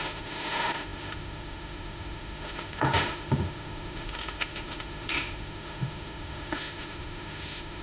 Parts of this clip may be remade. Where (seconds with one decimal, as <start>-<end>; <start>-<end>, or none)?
0.0-7.8